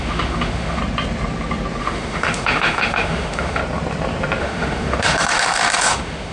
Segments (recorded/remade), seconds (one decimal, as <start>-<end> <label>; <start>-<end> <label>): 0.0-0.8 remade; 0.8-1.8 recorded; 1.8-3.6 remade; 3.6-4.4 recorded; 4.4-6.3 remade